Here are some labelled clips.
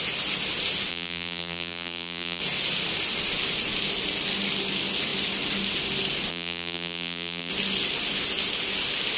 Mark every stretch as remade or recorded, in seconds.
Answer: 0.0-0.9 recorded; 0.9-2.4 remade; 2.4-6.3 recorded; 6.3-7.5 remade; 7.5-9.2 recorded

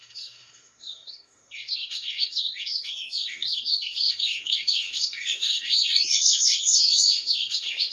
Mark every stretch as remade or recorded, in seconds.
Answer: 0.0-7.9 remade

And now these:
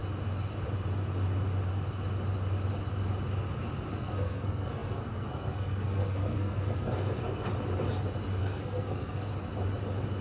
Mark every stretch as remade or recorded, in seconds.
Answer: 0.0-3.9 recorded; 3.9-7.5 remade; 7.5-8.4 recorded; 8.4-9.3 remade; 9.3-10.2 recorded